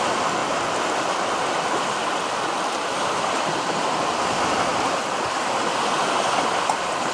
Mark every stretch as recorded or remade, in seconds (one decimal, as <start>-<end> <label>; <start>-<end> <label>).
0.0-7.1 recorded